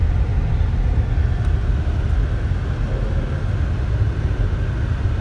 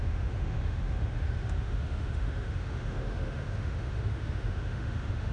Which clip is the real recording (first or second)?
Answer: first